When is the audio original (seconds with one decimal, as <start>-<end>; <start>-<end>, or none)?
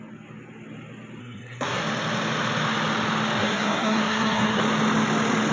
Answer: 0.0-1.2; 1.8-3.4; 4.6-5.5